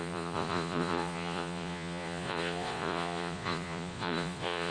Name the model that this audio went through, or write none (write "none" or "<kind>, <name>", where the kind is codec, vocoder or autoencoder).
vocoder, Vocos